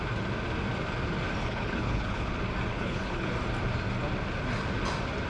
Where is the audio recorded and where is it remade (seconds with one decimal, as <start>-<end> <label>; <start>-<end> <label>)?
0.0-1.4 recorded; 1.4-2.3 remade; 2.3-2.7 recorded; 2.7-3.3 remade; 3.3-5.3 recorded